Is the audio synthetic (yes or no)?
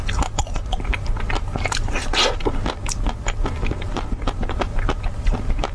no